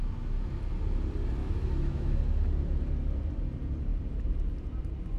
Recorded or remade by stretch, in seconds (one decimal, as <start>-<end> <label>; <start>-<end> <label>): 0.0-1.4 recorded; 1.4-2.2 remade; 2.2-5.2 recorded